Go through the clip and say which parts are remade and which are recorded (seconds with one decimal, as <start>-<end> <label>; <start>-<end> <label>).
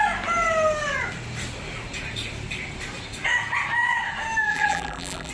0.0-4.5 recorded; 4.5-5.3 remade